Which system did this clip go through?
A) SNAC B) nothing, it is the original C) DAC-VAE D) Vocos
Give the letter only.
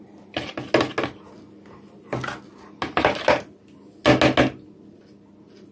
B